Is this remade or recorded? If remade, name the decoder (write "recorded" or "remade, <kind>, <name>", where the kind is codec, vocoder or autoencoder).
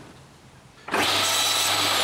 recorded